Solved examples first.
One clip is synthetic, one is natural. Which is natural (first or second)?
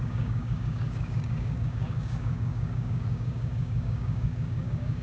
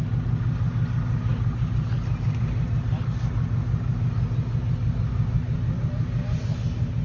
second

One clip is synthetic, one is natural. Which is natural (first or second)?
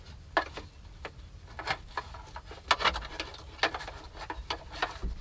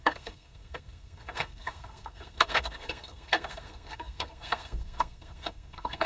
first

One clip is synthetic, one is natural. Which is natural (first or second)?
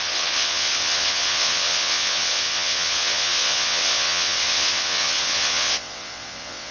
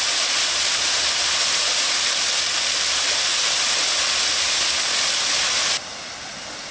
second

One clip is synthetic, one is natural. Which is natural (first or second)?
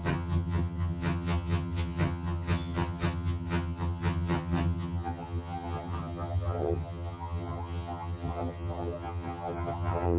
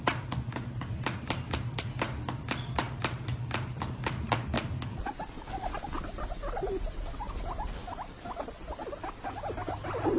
second